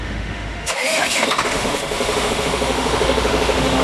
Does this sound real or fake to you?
fake